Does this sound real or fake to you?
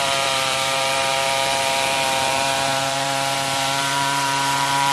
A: fake